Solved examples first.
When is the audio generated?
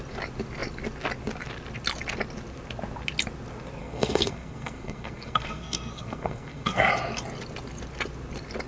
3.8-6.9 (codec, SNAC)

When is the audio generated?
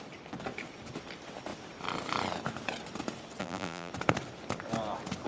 3.4-3.9 (vocoder, BigVGAN v2)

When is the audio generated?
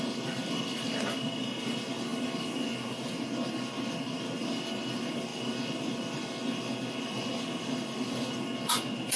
none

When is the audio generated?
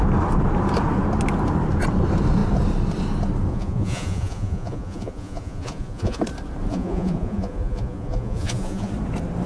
3.5-6.2 (vocoder, Vocos); 6.7-8.9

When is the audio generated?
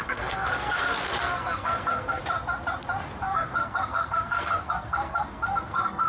0.0-2.2 (codec, SNAC); 3.2-6.1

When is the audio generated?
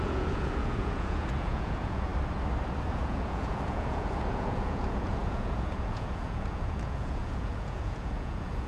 0.0-2.1 (vocoder, Vocos); 2.9-8.7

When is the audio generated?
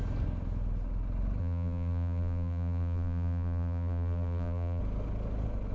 1.4-4.8 (vocoder, BigVGAN v2)